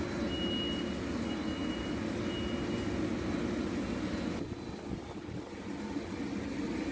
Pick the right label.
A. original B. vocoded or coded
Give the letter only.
A